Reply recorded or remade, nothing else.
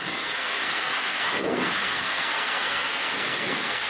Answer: remade